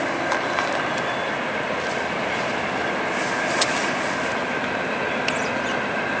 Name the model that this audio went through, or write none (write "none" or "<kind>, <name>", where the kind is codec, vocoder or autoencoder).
none